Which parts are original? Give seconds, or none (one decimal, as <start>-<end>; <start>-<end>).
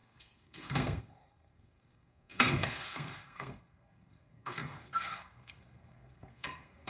none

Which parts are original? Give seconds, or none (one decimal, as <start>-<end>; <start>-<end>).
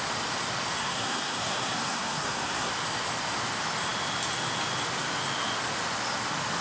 0.0-0.8; 2.7-6.6